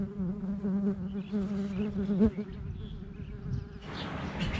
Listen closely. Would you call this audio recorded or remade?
recorded